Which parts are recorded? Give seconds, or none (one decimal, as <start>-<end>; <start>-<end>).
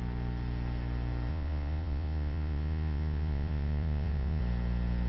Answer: 0.0-1.3; 4.4-5.1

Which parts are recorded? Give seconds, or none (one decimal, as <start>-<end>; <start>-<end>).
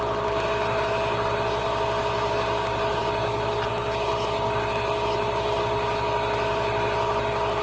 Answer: 0.0-7.6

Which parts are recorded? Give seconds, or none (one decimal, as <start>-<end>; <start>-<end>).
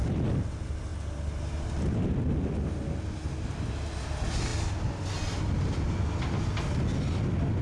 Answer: 0.0-7.6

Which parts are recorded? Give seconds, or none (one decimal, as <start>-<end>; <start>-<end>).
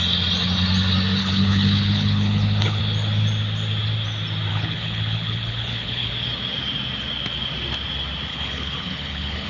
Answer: 0.0-1.2; 2.8-4.5; 6.1-8.3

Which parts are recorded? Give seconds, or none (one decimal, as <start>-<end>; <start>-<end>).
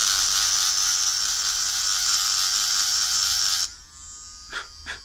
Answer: 0.7-1.9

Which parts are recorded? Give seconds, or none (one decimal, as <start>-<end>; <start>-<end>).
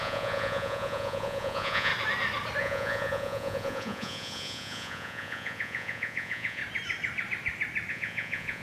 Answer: 1.9-2.6; 6.6-7.9